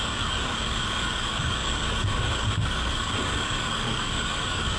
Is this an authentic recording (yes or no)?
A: no